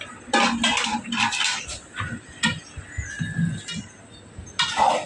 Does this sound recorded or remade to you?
recorded